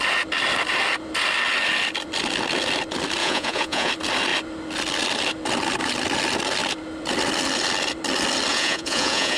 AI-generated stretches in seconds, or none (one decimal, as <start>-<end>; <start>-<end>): 3.2-3.9; 8.5-9.4